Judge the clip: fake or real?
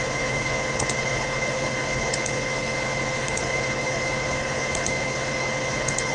fake